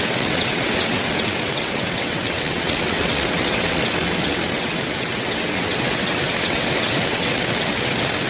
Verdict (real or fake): fake